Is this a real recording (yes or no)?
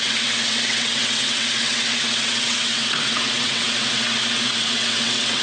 no